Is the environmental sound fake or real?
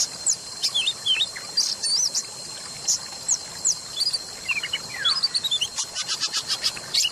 real